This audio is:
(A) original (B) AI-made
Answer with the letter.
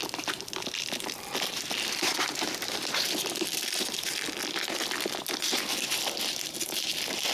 A